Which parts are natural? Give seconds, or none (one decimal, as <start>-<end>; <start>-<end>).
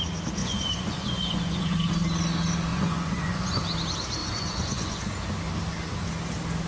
0.0-0.4; 1.9-2.7; 3.6-4.2; 5.0-6.7